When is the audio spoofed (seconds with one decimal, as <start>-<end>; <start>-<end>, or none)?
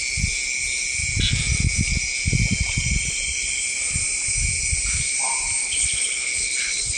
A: 5.6-7.0